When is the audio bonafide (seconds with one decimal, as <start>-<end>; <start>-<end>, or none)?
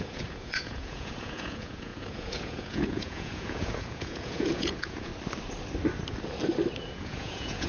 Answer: 5.1-6.8